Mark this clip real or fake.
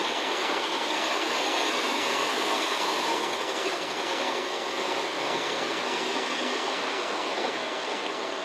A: fake